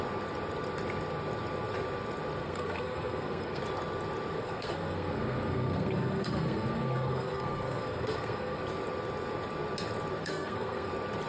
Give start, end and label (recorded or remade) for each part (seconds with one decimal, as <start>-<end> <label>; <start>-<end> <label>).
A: 0.0-2.4 recorded; 2.4-3.6 remade; 3.6-4.3 recorded; 4.3-8.6 remade; 8.6-10.2 recorded; 10.2-10.9 remade; 10.9-11.3 recorded